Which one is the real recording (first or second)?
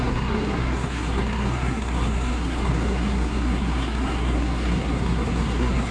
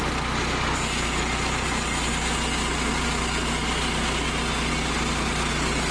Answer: second